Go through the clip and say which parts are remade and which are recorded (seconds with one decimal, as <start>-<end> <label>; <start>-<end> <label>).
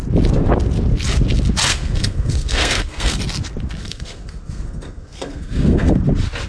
0.0-1.7 recorded; 1.7-3.2 remade; 3.2-3.8 recorded; 3.8-5.9 remade; 5.9-6.5 recorded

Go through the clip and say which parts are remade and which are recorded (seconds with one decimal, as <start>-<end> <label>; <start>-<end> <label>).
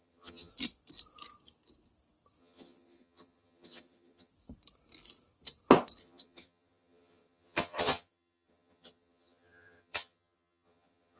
0.0-0.5 remade; 0.5-2.4 recorded; 2.4-4.3 remade; 4.3-6.0 recorded; 6.0-11.2 remade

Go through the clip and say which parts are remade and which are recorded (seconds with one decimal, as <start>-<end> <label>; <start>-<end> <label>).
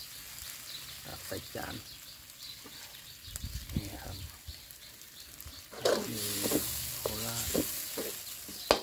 0.0-1.1 recorded; 1.1-1.7 remade; 1.7-8.8 recorded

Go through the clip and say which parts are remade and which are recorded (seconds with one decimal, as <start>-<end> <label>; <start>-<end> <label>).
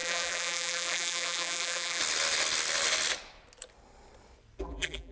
0.0-2.0 remade; 2.0-4.6 recorded; 4.6-5.1 remade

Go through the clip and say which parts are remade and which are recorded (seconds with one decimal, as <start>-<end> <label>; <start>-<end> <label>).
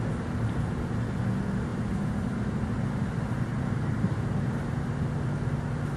0.0-1.7 recorded; 1.7-5.0 remade; 5.0-6.0 recorded